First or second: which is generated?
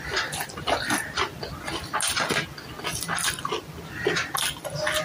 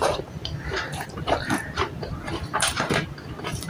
second